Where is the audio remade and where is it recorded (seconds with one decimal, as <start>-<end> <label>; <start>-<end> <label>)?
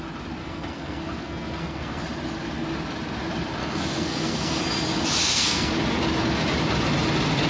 0.0-0.4 recorded; 0.4-2.0 remade; 2.0-3.6 recorded; 3.6-4.6 remade; 4.6-5.2 recorded; 5.2-5.7 remade; 5.7-7.5 recorded